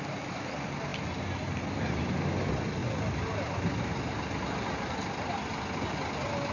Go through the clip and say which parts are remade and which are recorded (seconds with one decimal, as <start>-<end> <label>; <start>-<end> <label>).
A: 0.0-6.5 recorded